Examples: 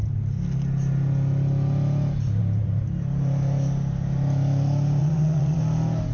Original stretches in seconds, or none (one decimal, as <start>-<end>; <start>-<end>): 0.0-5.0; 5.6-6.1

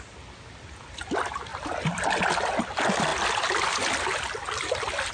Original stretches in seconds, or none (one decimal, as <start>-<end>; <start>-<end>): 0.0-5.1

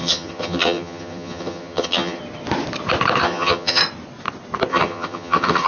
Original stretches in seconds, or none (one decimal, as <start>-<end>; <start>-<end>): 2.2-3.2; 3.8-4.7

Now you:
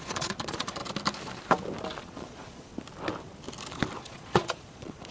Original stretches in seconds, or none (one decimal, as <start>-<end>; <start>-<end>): 0.8-2.0; 2.7-4.0

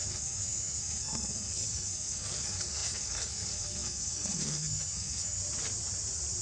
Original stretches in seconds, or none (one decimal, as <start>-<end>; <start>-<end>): 5.4-6.4